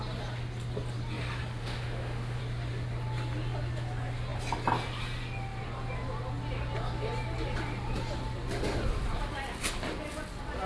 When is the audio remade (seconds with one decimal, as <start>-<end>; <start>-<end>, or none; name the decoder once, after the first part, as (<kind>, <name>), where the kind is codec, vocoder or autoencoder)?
1.6-2.4 (autoencoder, DAC-VAE)